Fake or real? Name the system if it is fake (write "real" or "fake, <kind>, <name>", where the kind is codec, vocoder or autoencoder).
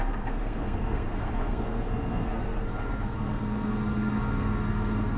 fake, codec, SNAC